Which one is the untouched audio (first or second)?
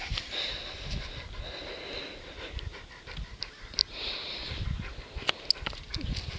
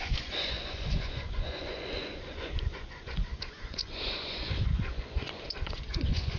first